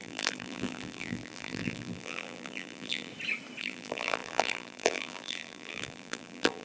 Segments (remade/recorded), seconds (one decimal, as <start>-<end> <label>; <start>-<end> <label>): 0.0-3.1 remade; 3.1-3.6 recorded; 3.6-6.6 remade

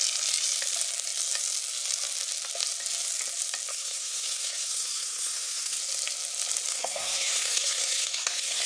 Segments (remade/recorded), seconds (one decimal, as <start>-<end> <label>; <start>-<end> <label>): 0.0-3.7 recorded; 3.7-5.8 remade; 5.8-6.7 recorded; 6.7-8.7 remade

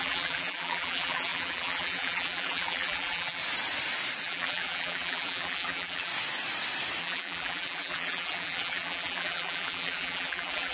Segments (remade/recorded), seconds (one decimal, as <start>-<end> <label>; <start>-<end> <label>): 0.0-3.4 remade; 3.4-4.2 recorded; 4.2-6.1 remade; 6.1-7.0 recorded; 7.0-10.7 remade